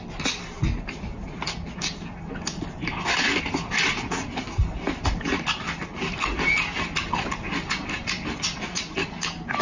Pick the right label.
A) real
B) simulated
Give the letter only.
A